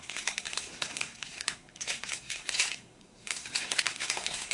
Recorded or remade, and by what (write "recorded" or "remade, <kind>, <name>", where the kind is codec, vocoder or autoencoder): remade, codec, SNAC